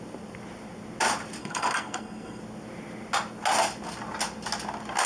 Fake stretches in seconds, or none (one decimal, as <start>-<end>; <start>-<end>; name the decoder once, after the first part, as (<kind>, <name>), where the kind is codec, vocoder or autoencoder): 1.4-2.4 (codec, SNAC)